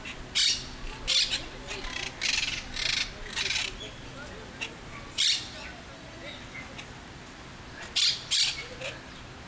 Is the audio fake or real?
real